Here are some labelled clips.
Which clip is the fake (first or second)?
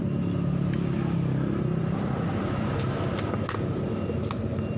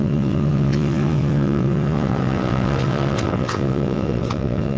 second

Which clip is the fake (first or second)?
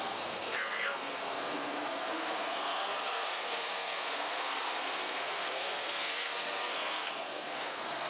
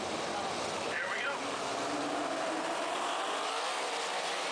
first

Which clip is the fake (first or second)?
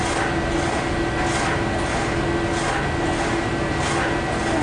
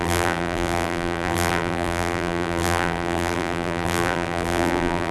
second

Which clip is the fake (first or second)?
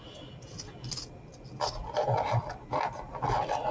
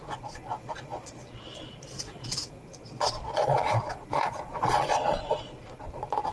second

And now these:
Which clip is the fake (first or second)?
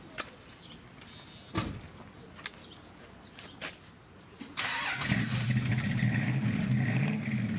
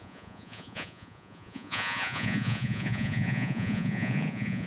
second